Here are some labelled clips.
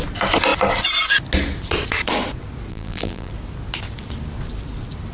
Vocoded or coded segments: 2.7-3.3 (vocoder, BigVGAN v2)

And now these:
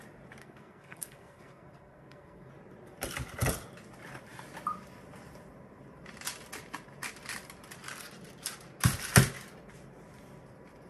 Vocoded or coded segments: 0.4-2.5 (codec, SNAC)